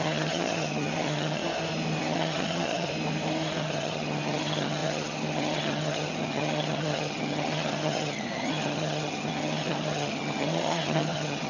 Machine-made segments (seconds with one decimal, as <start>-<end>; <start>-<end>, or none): 0.0-1.4; 2.0-2.9; 3.6-11.5